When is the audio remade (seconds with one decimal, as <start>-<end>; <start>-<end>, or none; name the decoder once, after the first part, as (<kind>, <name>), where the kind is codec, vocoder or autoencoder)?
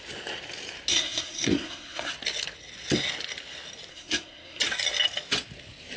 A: 0.9-2.1 (codec, SNAC); 3.9-4.6